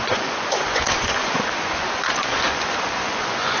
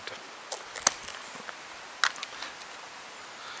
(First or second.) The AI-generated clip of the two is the first